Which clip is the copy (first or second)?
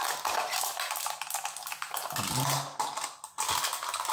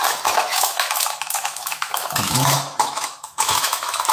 second